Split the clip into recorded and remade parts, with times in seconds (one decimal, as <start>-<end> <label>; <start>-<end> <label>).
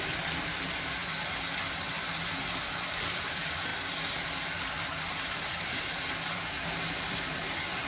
0.0-1.0 remade; 1.0-2.5 recorded; 2.5-3.7 remade; 3.7-4.6 recorded; 4.6-7.9 remade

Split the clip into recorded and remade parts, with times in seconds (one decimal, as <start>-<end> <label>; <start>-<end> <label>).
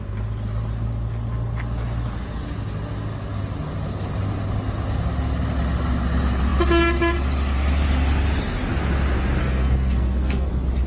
0.0-9.4 recorded; 9.4-10.5 remade; 10.5-10.9 recorded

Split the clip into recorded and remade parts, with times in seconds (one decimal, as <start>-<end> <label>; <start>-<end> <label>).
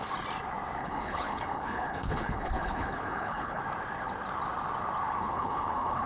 0.0-0.8 recorded; 0.8-3.6 remade; 3.6-5.2 recorded; 5.2-6.1 remade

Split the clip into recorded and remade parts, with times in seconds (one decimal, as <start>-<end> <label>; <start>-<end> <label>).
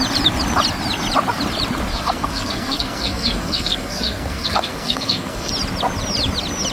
0.0-1.9 recorded; 1.9-5.5 remade; 5.5-6.7 recorded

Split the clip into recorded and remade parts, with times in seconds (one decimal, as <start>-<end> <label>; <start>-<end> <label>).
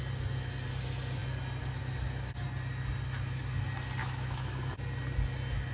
0.0-4.0 recorded; 4.0-4.6 remade; 4.6-5.7 recorded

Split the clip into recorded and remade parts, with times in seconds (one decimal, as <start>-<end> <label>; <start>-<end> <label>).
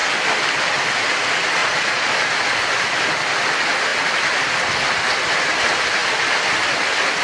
0.0-1.6 recorded; 1.6-2.1 remade; 2.1-7.2 recorded